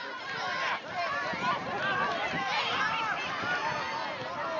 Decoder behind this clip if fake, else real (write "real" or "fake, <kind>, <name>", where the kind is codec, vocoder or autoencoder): fake, vocoder, BigVGAN v2